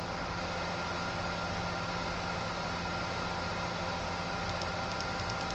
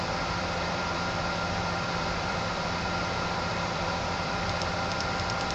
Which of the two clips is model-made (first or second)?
second